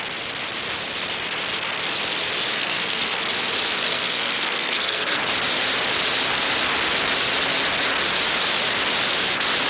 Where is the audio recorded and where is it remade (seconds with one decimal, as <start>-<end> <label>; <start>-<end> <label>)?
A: 0.0-2.5 recorded; 2.5-3.2 remade; 3.2-3.8 recorded; 3.8-5.2 remade; 5.2-9.7 recorded